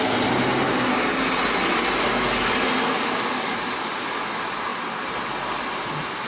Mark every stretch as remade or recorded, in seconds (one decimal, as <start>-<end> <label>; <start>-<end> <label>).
0.0-6.3 recorded